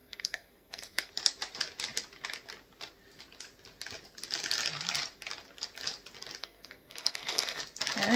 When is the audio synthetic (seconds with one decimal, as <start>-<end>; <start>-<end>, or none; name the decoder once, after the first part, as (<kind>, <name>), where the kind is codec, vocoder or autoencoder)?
0.0-1.1 (codec, SNAC); 6.4-7.6